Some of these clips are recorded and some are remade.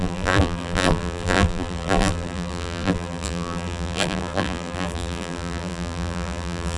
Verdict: remade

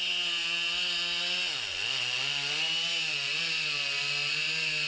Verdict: recorded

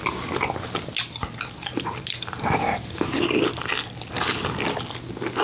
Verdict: recorded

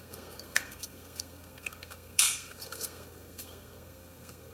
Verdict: remade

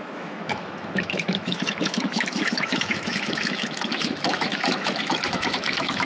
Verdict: remade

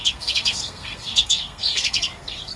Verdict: remade